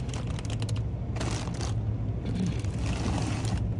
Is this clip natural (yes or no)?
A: yes